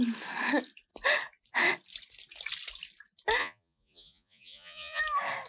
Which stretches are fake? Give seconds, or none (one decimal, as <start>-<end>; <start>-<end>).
3.4-5.0